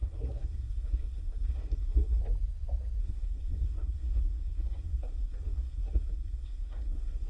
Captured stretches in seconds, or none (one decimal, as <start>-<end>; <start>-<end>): 2.2-3.0